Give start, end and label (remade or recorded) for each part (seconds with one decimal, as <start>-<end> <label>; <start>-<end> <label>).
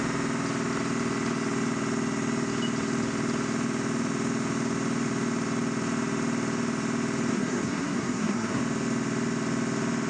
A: 0.0-7.3 recorded; 7.3-8.6 remade; 8.6-10.1 recorded